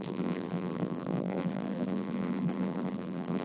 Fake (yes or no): yes